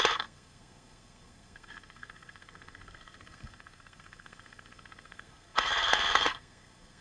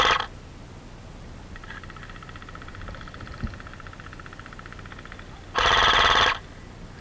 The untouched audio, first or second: second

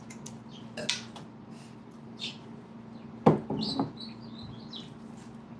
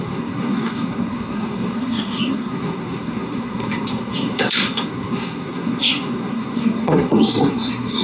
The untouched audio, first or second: first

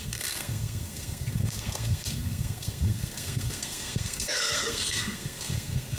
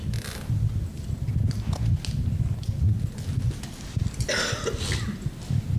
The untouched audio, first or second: second